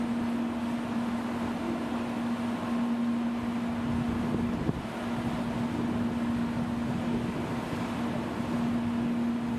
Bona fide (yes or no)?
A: yes